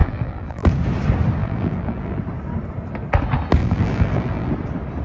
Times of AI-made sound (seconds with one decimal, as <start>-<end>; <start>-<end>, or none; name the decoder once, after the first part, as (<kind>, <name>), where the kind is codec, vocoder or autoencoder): 0.0-0.7 (vocoder, BigVGAN v2); 1.4-2.2; 3.6-4.5